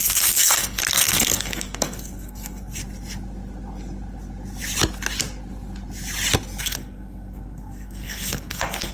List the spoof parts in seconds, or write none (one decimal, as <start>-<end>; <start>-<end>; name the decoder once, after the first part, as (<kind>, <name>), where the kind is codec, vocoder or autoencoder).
0.0-2.8 (codec, SNAC); 6.6-8.9